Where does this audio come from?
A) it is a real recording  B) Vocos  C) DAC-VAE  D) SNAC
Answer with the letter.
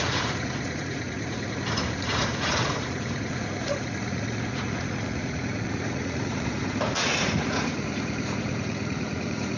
B